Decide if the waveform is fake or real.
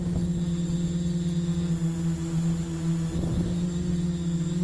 real